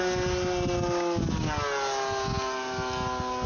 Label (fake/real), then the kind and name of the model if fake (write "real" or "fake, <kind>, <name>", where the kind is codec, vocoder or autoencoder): real